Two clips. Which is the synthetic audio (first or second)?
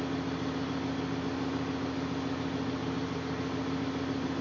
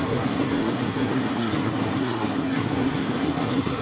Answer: second